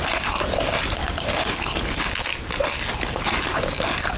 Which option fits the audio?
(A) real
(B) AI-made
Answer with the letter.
A